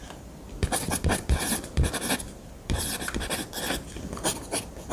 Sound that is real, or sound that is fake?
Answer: fake